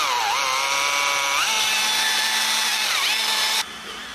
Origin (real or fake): real